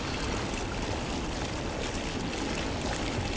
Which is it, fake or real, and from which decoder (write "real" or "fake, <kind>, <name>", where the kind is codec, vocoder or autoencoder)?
real